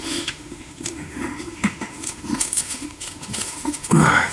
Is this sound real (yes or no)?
no